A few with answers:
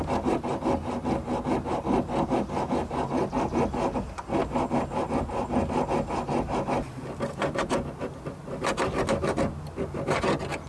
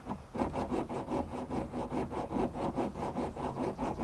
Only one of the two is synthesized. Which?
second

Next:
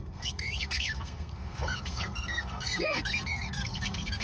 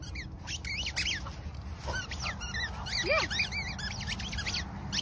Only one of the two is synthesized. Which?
first